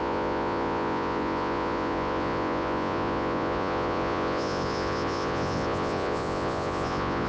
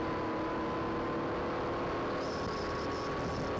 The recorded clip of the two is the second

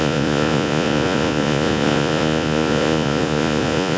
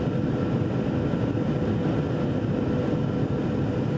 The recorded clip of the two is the second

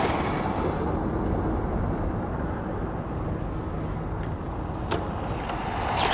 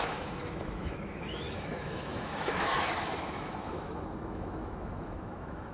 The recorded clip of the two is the first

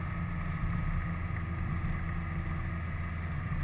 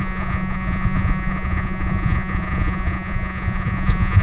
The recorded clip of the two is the first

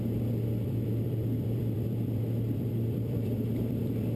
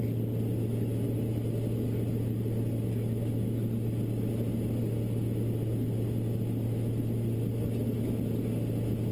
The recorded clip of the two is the second